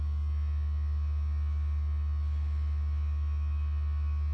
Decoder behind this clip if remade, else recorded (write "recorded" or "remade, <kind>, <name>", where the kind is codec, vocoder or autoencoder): recorded